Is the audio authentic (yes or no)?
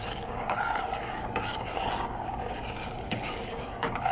no